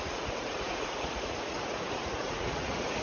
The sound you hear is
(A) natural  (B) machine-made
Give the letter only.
B